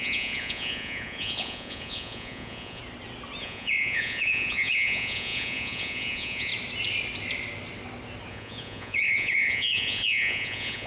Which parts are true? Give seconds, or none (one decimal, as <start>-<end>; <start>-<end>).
2.8-3.4; 6.5-8.3